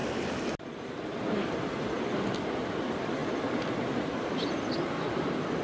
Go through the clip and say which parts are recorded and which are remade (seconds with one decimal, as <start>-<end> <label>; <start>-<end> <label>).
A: 0.0-5.6 recorded